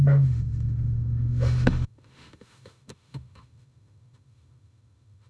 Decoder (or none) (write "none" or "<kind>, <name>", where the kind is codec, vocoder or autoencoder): autoencoder, DAC-VAE